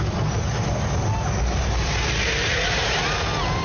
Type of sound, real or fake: real